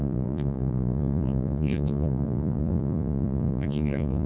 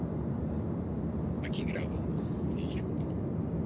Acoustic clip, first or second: second